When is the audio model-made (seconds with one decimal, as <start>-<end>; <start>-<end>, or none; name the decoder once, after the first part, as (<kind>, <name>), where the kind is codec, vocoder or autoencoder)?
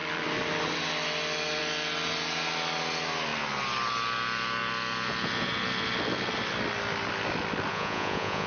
7.7-8.5 (vocoder, Vocos)